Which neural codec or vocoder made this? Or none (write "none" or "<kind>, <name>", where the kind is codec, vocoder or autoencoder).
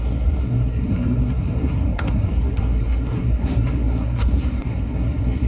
codec, SNAC